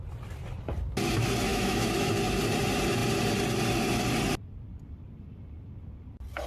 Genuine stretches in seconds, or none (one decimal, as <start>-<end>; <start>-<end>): 0.0-1.5; 2.1-6.5